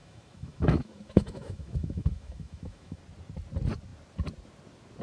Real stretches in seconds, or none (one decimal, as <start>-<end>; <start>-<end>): 3.0-5.0